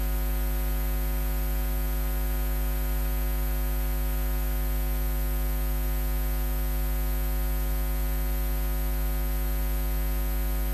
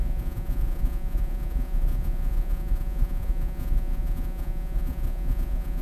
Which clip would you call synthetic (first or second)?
second